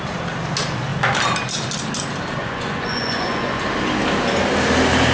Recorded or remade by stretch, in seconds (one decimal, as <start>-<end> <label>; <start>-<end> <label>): 0.0-2.4 recorded; 2.4-3.6 remade; 3.6-5.1 recorded